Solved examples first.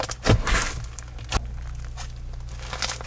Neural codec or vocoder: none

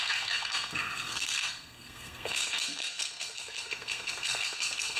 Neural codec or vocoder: codec, SNAC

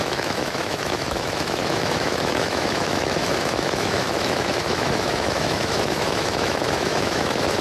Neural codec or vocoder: autoencoder, DAC-VAE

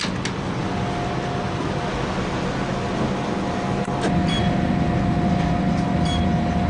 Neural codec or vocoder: none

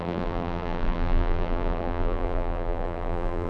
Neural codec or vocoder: vocoder, BigVGAN v2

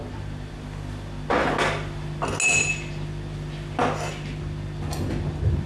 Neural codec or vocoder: none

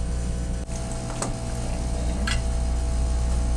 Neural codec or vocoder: none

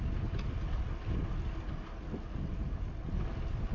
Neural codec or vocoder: none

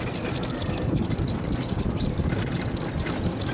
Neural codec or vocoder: none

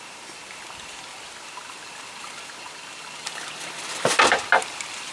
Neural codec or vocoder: none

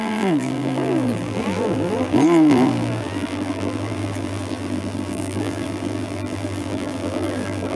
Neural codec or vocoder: vocoder, BigVGAN v2